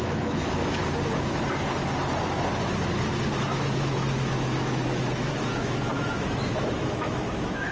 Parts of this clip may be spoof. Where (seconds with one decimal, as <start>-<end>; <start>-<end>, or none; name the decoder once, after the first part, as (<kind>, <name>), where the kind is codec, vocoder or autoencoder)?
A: 0.0-0.8 (autoencoder, DAC-VAE); 3.5-7.7

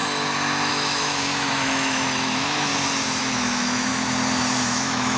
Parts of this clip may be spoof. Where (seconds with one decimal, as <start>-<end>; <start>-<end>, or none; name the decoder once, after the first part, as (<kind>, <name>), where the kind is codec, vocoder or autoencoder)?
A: 0.7-2.7 (autoencoder, DAC-VAE); 3.2-3.9; 4.6-5.2

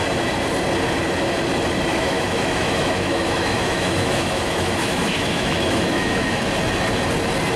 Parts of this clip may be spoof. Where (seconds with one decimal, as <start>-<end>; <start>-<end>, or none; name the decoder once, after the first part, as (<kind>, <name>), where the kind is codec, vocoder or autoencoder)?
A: 1.9-6.4 (autoencoder, DAC-VAE)

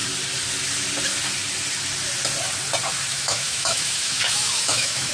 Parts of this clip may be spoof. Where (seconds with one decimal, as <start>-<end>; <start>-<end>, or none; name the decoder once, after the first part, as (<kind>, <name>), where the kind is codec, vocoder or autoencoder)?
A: 3.1-5.1 (autoencoder, DAC-VAE)

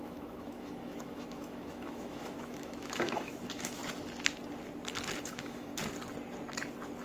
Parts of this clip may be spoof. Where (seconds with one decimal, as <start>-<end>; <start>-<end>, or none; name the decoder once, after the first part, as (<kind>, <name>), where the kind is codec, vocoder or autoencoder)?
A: 0.0-3.8 (autoencoder, DAC-VAE); 5.2-5.7

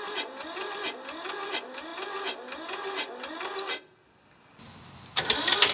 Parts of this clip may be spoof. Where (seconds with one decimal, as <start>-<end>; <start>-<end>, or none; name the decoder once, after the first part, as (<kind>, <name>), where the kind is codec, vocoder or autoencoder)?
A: none